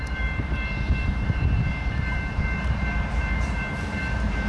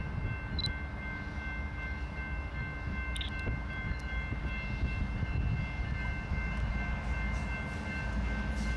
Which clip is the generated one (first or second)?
first